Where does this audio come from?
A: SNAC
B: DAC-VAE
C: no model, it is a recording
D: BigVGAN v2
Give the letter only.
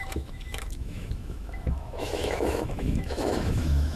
B